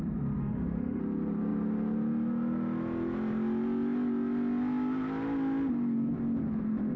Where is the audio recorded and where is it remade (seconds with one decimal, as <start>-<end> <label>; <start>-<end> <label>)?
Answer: 0.0-0.4 recorded; 0.4-1.0 remade; 1.0-7.0 recorded